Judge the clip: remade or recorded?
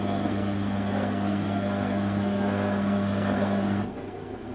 remade